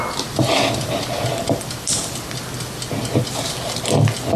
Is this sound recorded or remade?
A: recorded